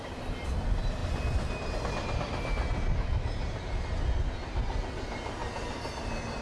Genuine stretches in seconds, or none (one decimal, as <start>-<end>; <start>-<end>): 0.0-6.4